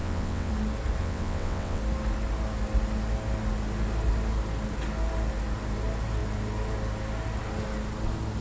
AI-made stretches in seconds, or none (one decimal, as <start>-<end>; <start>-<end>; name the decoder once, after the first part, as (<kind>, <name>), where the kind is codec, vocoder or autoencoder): 0.0-0.5 (vocoder, WaveNeXt); 1.0-1.8